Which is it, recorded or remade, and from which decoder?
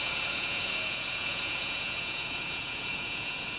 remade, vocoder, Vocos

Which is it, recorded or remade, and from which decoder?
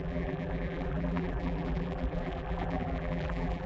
remade, vocoder, BigVGAN v2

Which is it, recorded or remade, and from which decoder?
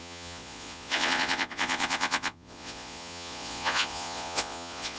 remade, vocoder, Vocos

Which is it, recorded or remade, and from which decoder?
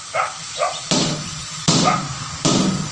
recorded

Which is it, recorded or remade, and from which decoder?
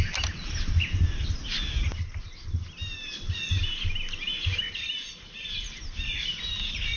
recorded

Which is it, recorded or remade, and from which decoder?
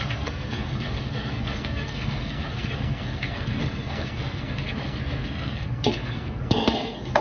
remade, codec, SNAC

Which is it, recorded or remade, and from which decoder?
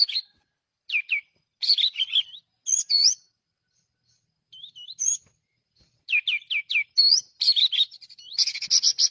recorded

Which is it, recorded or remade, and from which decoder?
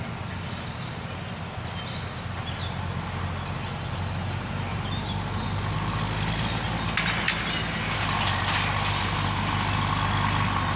recorded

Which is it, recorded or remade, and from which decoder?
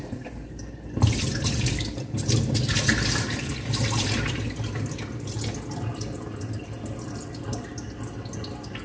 recorded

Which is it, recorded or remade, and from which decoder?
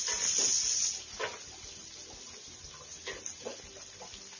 recorded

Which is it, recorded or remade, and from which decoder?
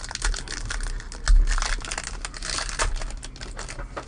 recorded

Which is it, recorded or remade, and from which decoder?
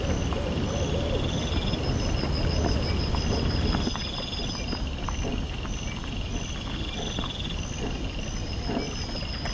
recorded